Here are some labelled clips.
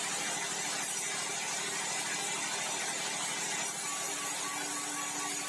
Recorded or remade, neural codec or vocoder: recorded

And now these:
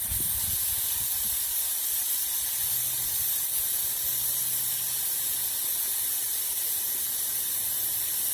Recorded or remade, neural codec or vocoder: recorded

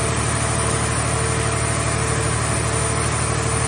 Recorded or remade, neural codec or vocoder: recorded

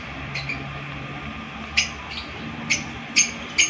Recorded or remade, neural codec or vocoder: recorded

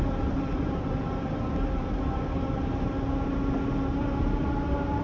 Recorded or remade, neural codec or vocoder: recorded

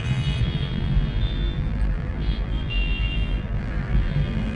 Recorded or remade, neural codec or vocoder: remade, vocoder, BigVGAN v2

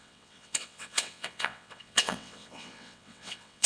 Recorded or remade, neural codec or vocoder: remade, vocoder, WaveNeXt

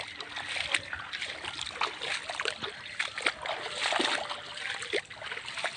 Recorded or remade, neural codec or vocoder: recorded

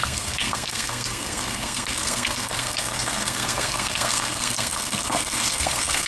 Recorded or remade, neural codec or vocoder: remade, codec, SNAC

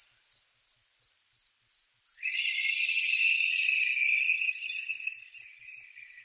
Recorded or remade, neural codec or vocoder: recorded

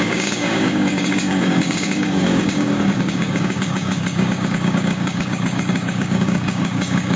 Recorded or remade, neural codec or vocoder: remade, codec, DAC